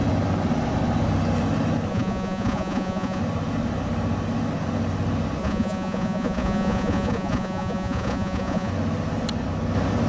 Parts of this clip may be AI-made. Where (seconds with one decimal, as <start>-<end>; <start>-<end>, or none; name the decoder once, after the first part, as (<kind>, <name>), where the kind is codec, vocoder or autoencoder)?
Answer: 1.9-3.2 (vocoder, Vocos); 5.4-8.7